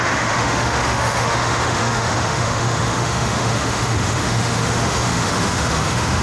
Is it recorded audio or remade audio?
remade